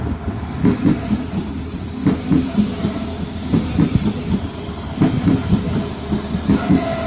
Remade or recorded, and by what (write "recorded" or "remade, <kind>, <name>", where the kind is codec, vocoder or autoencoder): recorded